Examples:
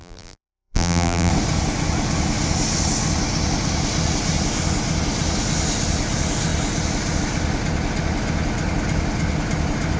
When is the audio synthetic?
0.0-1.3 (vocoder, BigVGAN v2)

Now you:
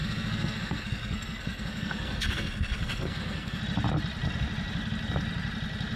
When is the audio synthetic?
0.0-3.6 (codec, SNAC)

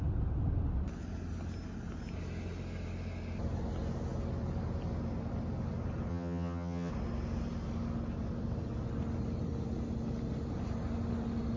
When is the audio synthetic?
6.1-6.9 (vocoder, HiFi-GAN)

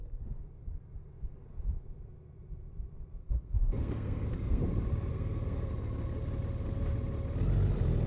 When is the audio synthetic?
3.2-4.6 (codec, SNAC); 5.1-5.7